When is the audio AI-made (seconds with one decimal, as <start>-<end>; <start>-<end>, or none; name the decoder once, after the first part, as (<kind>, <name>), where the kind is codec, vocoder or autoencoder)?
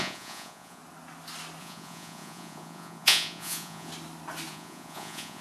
0.0-0.8 (vocoder, Vocos); 1.6-3.9; 4.5-5.4